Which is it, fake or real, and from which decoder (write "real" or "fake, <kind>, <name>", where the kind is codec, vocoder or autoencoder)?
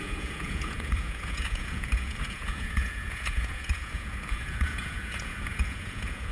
fake, vocoder, Vocos